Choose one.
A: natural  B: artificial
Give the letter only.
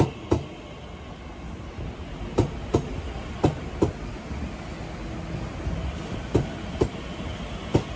A